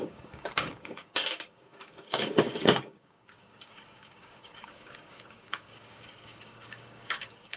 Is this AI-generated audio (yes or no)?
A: yes